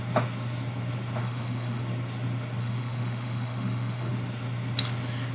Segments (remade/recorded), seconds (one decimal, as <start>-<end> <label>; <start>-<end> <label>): 0.0-1.2 recorded; 1.2-1.8 remade; 1.8-2.6 recorded; 2.6-4.1 remade; 4.1-5.3 recorded